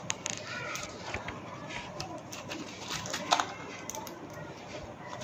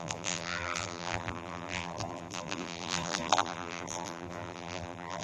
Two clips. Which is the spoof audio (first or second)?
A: second